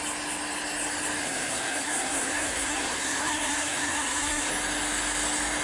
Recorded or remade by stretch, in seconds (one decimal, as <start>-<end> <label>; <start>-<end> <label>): 0.0-1.2 recorded; 1.2-4.5 remade; 4.5-5.6 recorded